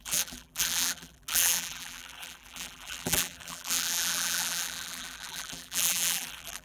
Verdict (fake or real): fake